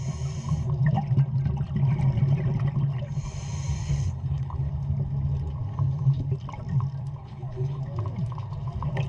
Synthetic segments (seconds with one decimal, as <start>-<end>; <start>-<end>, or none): 3.8-4.7; 7.2-7.8